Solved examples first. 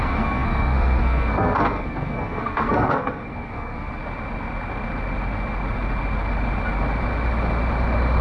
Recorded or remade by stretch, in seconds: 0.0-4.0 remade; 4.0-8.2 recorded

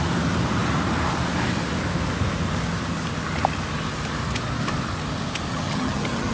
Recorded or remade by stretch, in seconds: 0.0-5.5 recorded; 5.5-6.3 remade

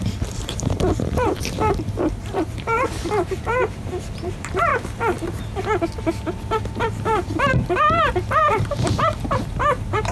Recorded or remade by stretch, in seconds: 0.0-4.7 remade; 4.7-7.0 recorded; 7.0-10.1 remade

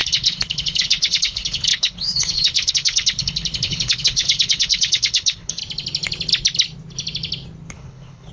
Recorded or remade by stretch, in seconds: 0.0-5.6 remade; 5.6-7.7 recorded; 7.7-8.3 remade

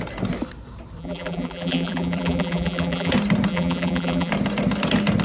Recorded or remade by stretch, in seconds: 0.0-1.0 recorded; 1.0-3.1 remade; 3.1-3.5 recorded; 3.5-4.3 remade; 4.3-5.2 recorded